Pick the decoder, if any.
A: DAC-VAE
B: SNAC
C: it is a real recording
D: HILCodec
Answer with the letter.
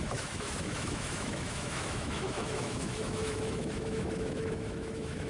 A